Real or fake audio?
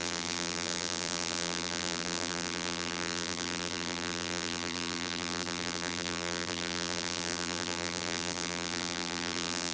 fake